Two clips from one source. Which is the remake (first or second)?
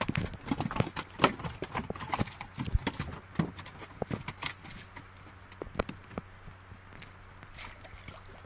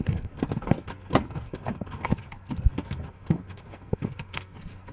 second